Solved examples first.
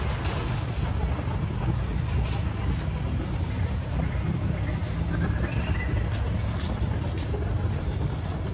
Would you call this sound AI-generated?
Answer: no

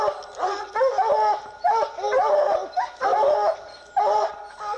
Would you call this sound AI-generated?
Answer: no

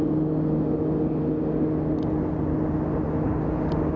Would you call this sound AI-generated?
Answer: no